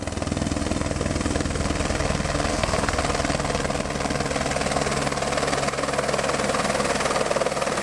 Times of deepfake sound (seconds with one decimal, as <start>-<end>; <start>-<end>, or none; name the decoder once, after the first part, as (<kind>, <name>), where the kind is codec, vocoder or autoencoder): 2.5-3.0 (codec, SNAC)

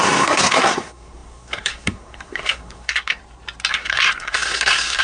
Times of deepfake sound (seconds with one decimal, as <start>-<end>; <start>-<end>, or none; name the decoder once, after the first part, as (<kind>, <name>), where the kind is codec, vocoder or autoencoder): 0.0-3.2 (codec, SNAC); 3.7-5.0